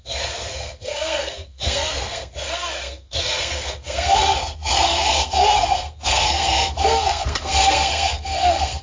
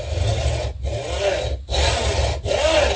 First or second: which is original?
second